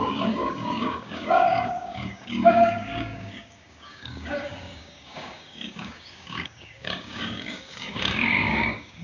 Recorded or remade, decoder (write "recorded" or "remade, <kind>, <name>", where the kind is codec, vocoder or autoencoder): remade, codec, DAC